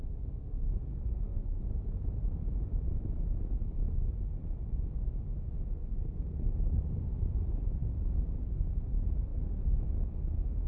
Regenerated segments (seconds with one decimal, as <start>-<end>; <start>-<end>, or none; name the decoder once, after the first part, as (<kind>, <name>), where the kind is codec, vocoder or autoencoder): 0.9-1.6 (codec, SNAC); 5.7-6.5